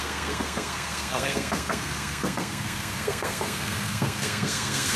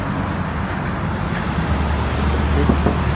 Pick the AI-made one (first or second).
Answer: first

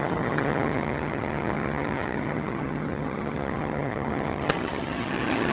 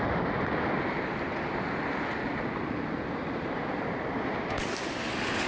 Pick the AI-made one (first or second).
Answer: first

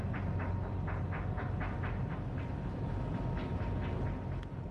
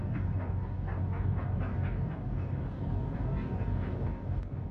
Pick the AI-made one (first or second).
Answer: second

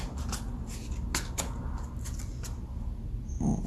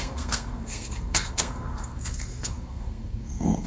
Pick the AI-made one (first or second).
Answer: second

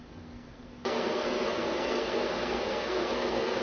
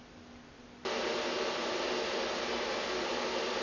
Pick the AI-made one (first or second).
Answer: first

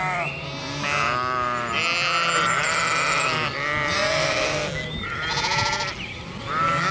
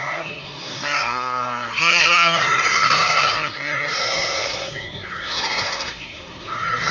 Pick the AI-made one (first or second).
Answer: second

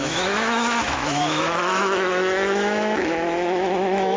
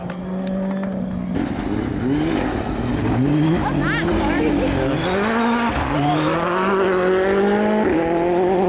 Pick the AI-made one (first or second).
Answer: first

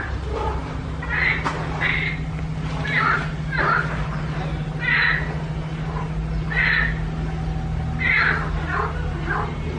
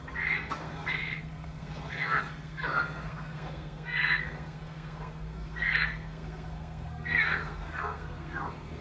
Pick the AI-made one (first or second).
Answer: second